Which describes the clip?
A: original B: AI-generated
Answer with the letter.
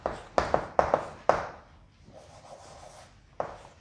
A